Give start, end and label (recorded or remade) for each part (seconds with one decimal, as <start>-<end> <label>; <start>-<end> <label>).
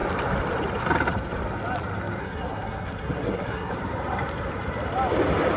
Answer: 0.0-2.2 recorded; 2.2-3.7 remade; 3.7-5.6 recorded